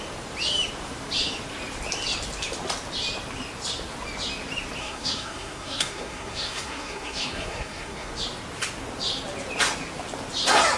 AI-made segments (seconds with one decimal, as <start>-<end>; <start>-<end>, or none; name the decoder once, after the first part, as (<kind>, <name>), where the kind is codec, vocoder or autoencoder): 4.8-8.1 (codec, SNAC)